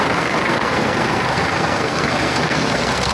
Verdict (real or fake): fake